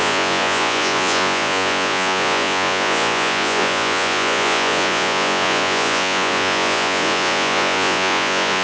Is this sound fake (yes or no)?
yes